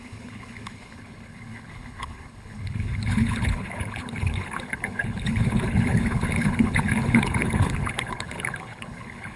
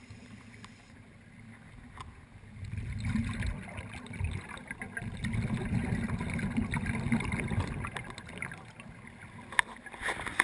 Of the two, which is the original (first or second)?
second